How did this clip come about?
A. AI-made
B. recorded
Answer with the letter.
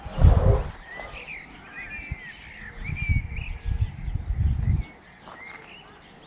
B